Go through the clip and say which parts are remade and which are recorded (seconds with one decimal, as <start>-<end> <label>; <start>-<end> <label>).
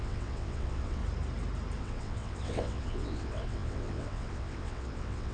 0.0-1.0 remade; 1.0-1.8 recorded; 1.8-5.3 remade